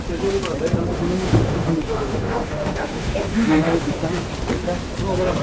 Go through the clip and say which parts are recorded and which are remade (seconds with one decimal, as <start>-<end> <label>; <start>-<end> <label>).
0.0-0.9 recorded; 0.9-4.0 remade; 4.0-5.4 recorded